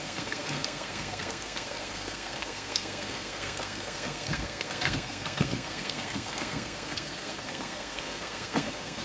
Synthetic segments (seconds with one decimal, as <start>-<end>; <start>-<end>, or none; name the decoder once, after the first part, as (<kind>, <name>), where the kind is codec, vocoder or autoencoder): 0.0-9.0 (codec, SNAC)